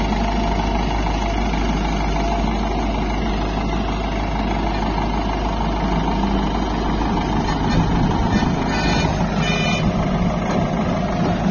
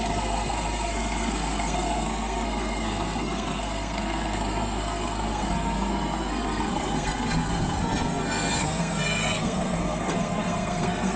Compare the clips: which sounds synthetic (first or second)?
second